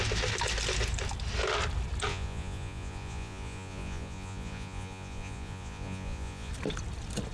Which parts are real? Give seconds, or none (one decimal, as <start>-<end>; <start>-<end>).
0.0-2.1; 6.5-7.3